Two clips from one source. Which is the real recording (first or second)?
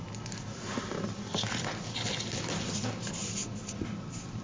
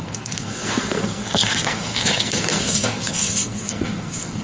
first